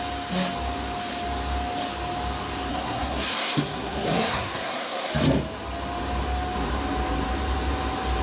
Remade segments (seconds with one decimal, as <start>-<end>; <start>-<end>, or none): 2.7-5.1